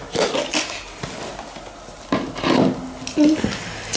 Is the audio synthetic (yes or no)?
no